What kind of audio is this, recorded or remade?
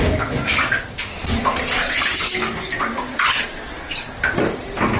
recorded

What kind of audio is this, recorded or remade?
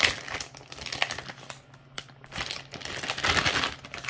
recorded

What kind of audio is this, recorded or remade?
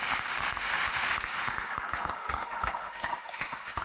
remade